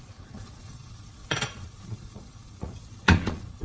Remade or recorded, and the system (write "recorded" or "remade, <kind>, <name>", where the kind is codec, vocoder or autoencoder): remade, vocoder, Vocos